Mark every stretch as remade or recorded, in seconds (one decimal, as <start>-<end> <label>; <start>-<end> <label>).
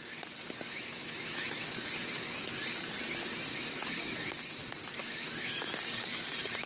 0.0-0.7 recorded; 0.7-1.5 remade; 1.5-3.5 recorded; 3.5-4.3 remade; 4.3-5.0 recorded; 5.0-5.7 remade; 5.7-6.7 recorded